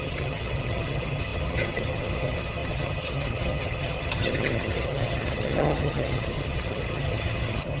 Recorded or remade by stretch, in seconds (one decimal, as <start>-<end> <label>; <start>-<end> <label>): 0.0-7.8 remade